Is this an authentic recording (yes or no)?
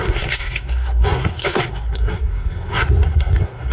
no